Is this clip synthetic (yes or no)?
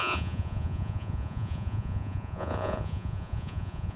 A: yes